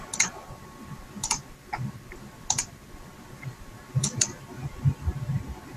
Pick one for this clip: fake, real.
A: fake